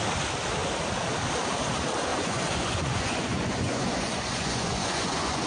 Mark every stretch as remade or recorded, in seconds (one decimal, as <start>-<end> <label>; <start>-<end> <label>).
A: 0.0-2.1 recorded; 2.1-5.5 remade